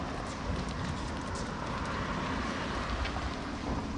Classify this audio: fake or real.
real